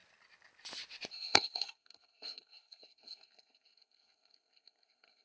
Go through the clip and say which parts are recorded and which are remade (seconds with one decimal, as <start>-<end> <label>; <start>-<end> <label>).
0.0-1.1 recorded; 1.1-5.2 remade